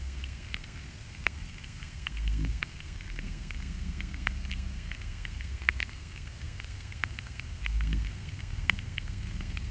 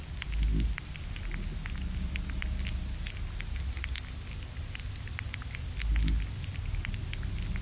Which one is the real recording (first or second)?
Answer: second